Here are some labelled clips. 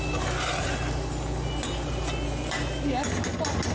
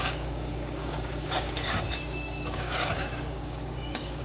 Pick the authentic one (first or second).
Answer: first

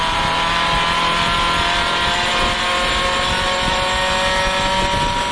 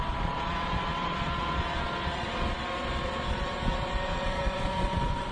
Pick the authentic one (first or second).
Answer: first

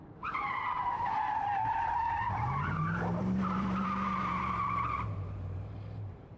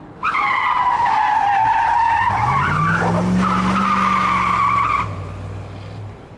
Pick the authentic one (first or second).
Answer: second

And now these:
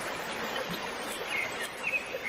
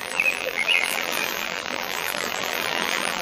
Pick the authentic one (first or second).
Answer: first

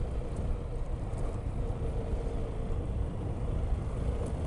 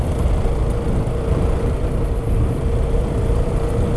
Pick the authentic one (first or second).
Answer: second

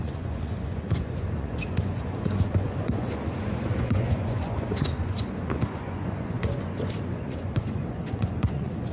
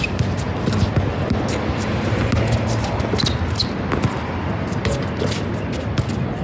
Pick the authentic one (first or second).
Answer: second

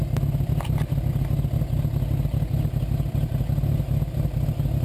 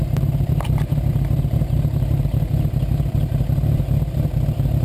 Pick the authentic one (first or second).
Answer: first